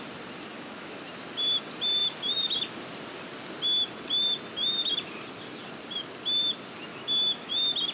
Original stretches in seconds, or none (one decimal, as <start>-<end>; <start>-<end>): 0.0-0.5; 1.0-6.9; 7.5-7.9